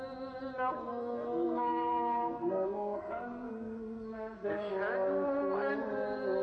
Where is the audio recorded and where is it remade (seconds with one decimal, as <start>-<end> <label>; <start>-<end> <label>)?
0.0-0.9 recorded; 0.9-4.7 remade; 4.7-6.4 recorded